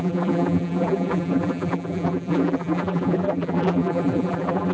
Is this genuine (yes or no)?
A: no